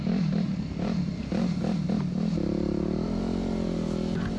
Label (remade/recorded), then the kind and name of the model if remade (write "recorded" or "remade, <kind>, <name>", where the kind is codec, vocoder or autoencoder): remade, vocoder, BigVGAN v2